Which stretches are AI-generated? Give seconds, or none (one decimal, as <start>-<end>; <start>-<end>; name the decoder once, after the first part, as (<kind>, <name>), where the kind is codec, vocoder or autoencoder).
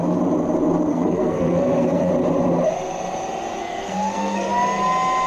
0.9-2.1 (codec, SNAC); 3.6-4.5